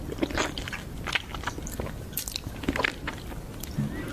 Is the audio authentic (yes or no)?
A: yes